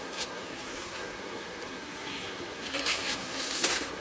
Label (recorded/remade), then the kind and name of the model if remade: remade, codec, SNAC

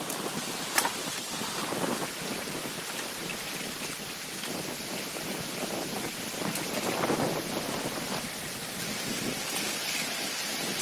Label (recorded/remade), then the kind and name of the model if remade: recorded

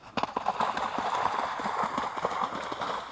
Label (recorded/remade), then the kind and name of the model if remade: recorded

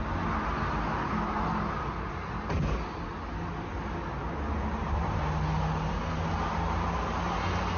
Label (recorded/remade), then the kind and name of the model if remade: recorded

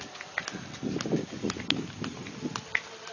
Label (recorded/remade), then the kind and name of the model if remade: recorded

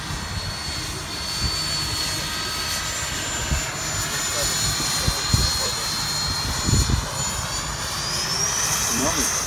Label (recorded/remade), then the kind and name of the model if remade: recorded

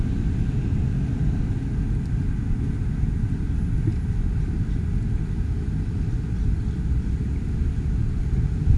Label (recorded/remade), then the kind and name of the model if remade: recorded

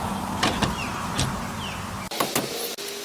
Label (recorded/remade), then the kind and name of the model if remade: recorded